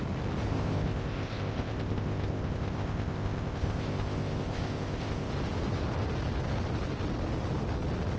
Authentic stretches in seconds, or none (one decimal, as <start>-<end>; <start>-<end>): 0.0-0.5; 5.3-8.2